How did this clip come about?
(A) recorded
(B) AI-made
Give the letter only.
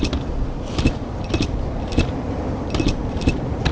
A